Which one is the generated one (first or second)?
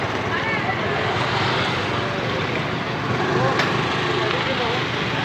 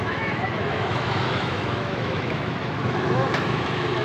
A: second